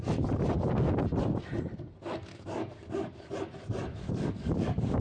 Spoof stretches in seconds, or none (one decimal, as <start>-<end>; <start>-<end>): 2.3-3.3; 3.9-5.0